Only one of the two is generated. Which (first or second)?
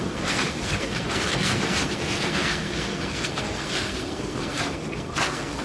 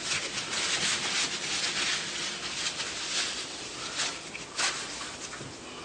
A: first